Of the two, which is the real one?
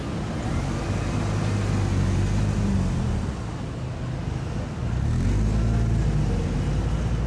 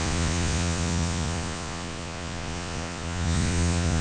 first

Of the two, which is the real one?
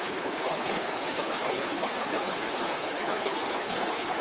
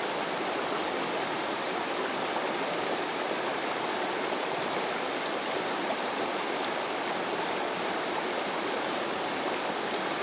second